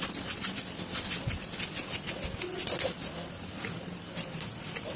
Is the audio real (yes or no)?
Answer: yes